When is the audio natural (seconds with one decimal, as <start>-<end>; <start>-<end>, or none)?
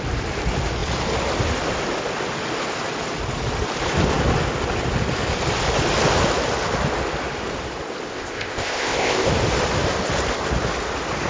0.0-8.1; 9.3-11.3